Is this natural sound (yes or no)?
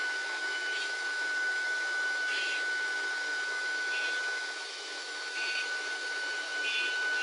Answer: no